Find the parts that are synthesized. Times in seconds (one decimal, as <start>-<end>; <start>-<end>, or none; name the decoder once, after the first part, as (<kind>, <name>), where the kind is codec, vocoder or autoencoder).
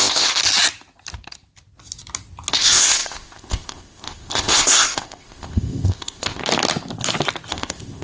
0.0-0.4 (codec, ZipCodec); 2.5-6.4; 7.5-8.0